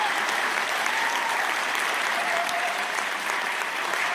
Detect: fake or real fake